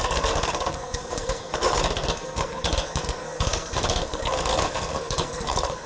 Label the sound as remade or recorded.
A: remade